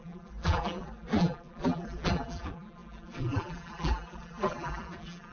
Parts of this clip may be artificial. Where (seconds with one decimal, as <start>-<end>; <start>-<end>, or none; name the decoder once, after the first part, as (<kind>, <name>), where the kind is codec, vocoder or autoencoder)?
0.0-5.3 (vocoder, BigVGAN v2)